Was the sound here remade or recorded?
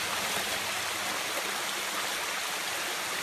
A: recorded